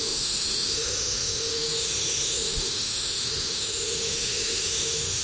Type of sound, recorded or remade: remade